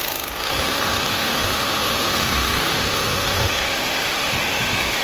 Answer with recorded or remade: remade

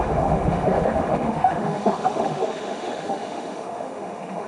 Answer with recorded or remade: remade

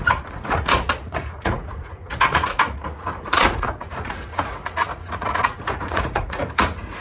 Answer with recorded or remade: remade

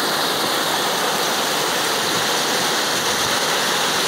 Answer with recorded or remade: recorded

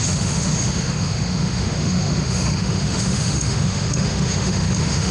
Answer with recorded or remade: remade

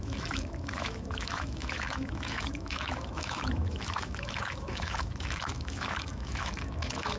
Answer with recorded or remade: remade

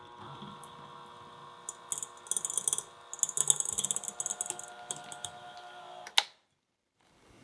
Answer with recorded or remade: recorded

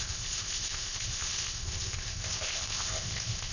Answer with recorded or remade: remade